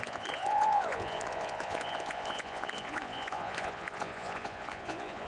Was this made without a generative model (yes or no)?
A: no